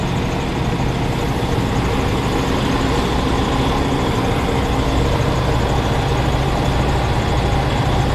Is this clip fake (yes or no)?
no